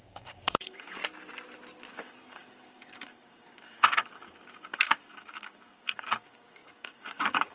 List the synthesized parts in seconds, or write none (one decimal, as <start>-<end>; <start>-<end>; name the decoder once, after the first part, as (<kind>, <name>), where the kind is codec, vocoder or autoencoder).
0.0-1.0 (codec, DAC); 1.9-7.5

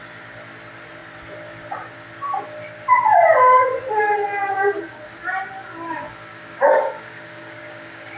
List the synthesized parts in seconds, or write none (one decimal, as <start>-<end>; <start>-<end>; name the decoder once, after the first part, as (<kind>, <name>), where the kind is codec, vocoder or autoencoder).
6.3-8.2 (codec, DAC)

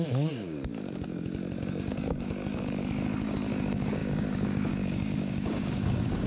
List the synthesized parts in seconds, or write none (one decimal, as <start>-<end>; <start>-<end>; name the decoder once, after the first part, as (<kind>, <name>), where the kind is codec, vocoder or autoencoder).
0.0-6.3 (codec, DAC)

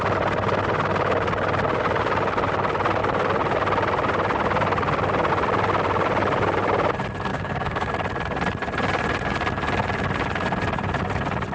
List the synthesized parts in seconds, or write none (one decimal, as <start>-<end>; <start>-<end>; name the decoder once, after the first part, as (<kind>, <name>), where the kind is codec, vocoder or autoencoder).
7.3-7.9 (codec, DAC)

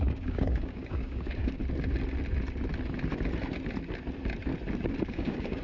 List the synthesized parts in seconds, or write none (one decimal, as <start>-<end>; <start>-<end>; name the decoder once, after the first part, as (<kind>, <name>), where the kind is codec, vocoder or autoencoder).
0.0-1.6 (codec, DAC); 5.0-5.6

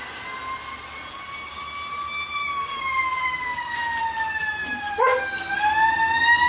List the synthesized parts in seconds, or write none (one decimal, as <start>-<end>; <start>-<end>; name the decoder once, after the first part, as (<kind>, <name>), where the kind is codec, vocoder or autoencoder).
2.4-4.0 (codec, DAC)

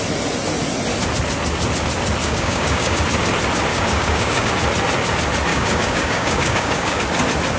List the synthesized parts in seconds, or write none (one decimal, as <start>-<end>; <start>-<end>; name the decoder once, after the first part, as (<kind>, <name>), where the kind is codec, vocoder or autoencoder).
2.2-3.0 (codec, DAC); 3.7-4.5; 5.5-7.0